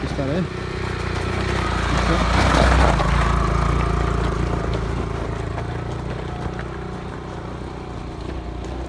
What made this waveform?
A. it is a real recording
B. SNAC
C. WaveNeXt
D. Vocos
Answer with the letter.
A